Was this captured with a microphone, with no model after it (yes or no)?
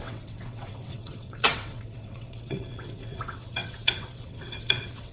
no